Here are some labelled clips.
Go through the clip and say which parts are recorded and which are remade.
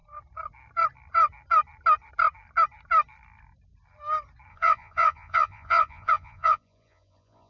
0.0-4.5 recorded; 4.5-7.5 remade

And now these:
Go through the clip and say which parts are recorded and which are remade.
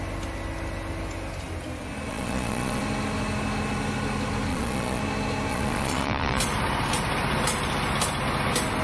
0.0-2.1 recorded; 2.1-2.8 remade; 2.8-4.5 recorded; 4.5-5.0 remade; 5.0-5.5 recorded; 5.5-6.4 remade; 6.4-8.8 recorded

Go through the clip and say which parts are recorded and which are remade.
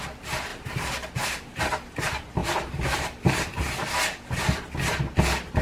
0.0-5.6 recorded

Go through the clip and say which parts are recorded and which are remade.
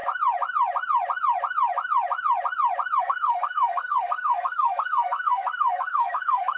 0.0-3.0 recorded; 3.0-6.6 remade